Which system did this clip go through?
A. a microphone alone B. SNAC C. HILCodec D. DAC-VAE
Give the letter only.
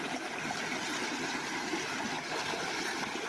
A